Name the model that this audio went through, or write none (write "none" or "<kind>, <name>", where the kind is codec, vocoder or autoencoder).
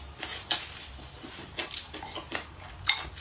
none